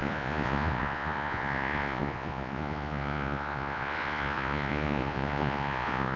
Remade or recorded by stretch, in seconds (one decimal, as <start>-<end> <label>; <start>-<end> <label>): 0.0-6.2 remade